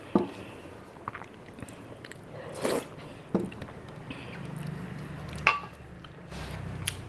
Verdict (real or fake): real